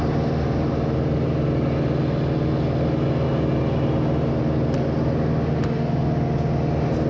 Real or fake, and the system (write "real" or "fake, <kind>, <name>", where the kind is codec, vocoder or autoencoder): real